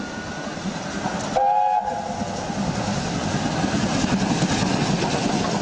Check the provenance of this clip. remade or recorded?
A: recorded